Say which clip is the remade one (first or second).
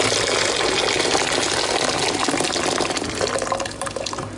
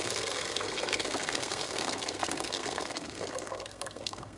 second